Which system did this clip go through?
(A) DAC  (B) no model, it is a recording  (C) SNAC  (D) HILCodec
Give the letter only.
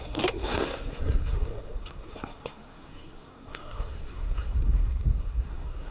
C